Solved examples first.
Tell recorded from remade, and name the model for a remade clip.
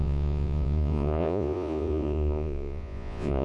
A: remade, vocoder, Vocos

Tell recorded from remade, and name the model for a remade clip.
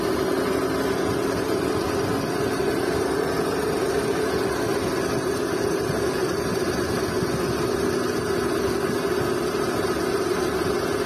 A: recorded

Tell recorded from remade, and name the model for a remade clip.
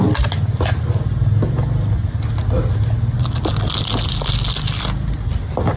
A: recorded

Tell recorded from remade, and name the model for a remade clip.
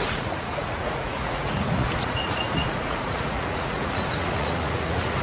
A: remade, vocoder, Vocos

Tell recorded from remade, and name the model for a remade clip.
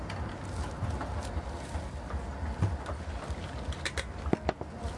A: recorded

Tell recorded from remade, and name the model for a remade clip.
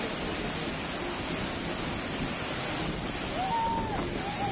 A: recorded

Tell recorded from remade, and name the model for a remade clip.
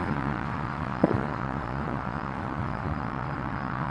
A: remade, vocoder, Vocos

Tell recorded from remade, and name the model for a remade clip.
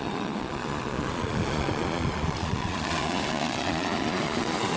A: remade, vocoder, Vocos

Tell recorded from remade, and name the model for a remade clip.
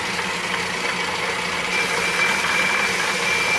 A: recorded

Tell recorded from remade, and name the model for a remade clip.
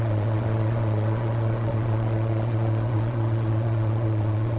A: remade, vocoder, Vocos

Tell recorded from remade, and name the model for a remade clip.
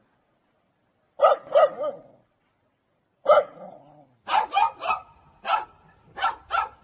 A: recorded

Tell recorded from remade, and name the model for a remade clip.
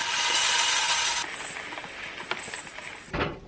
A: recorded